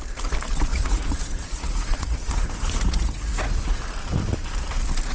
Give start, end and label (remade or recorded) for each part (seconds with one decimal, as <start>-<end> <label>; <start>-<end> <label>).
0.0-0.7 recorded; 0.7-3.8 remade; 3.8-5.1 recorded